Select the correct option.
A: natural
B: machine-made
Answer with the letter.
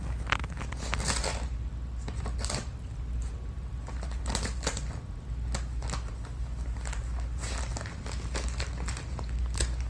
A